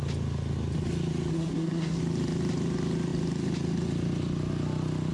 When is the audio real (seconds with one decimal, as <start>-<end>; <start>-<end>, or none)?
0.0-1.3; 2.0-5.1